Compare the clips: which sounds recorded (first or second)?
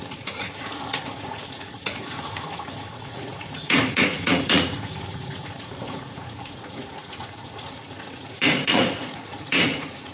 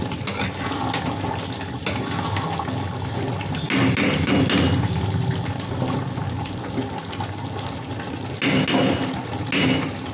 second